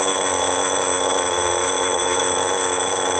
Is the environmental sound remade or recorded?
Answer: remade